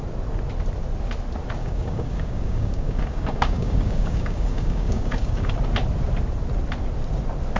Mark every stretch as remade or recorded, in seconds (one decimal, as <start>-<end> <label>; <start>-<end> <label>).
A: 0.0-1.6 recorded; 1.6-5.5 remade; 5.5-7.6 recorded

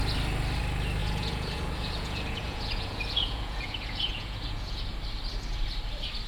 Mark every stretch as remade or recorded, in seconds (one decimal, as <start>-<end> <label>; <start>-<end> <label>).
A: 0.0-1.0 recorded; 1.0-4.8 remade; 4.8-6.3 recorded